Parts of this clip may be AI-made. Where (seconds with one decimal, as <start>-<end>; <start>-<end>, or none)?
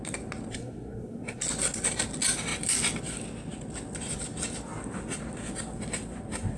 0.5-1.4